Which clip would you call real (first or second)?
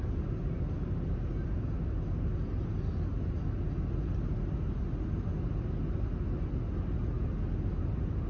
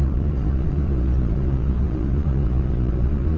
first